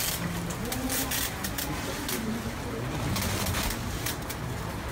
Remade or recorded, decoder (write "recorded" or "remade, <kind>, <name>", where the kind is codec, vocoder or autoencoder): recorded